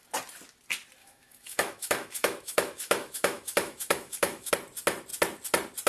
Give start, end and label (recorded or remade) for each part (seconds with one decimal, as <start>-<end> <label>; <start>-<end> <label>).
0.0-1.0 recorded; 1.0-4.5 remade; 4.5-5.9 recorded